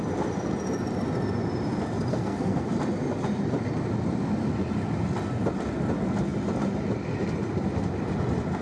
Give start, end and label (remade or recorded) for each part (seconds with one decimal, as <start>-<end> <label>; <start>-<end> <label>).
0.0-2.1 recorded; 2.1-2.7 remade; 2.7-8.6 recorded